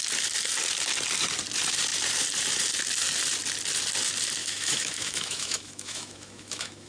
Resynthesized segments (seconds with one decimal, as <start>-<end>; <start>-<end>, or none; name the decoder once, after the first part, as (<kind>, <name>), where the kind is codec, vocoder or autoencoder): 4.4-6.9 (autoencoder, DAC-VAE)